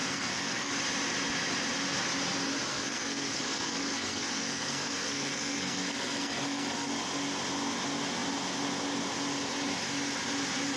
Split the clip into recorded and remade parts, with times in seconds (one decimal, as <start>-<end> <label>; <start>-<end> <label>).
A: 0.0-0.7 remade; 0.7-2.7 recorded; 2.7-6.9 remade; 6.9-10.8 recorded